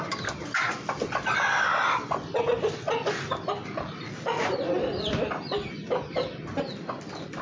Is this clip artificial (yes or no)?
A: no